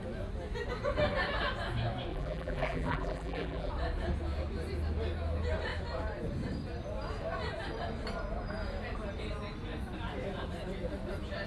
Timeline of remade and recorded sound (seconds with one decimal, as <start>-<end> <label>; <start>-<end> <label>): 0.0-2.1 recorded; 2.1-3.7 remade; 3.7-11.5 recorded